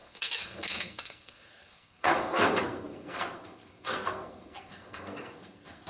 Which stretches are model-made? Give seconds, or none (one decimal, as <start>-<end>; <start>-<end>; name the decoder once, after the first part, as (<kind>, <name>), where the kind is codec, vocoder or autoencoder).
0.0-5.9 (codec, SNAC)